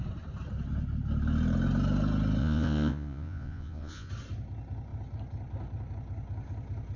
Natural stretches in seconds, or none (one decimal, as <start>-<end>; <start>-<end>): 0.0-2.4; 4.1-7.0